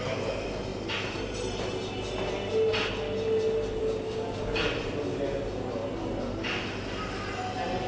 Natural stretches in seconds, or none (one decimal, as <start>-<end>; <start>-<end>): 0.0-3.8; 4.5-7.9

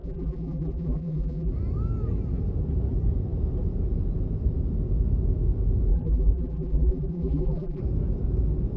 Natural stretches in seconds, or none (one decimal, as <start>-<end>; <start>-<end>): 1.5-5.9; 7.8-8.8

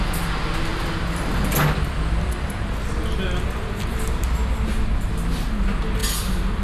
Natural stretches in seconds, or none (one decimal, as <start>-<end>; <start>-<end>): 0.0-6.6

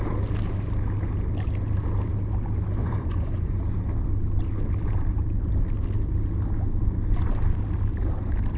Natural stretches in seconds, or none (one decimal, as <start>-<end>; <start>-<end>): 0.0-2.8; 3.6-8.6

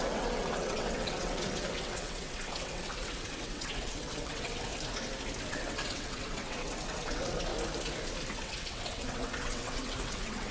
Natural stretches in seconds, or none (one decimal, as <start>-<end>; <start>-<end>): 4.7-5.5; 7.5-8.3

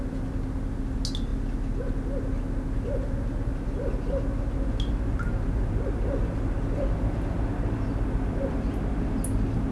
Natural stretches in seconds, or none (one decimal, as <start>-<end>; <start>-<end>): 0.0-9.7

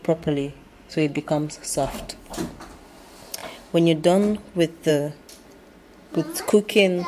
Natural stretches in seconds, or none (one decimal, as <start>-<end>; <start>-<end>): 1.3-7.1

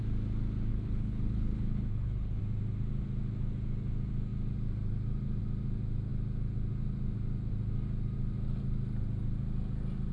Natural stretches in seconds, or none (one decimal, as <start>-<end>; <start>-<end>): 0.0-0.7; 2.4-10.1